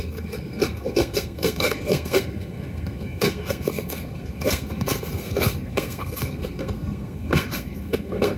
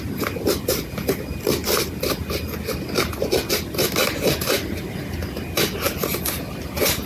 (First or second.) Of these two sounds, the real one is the second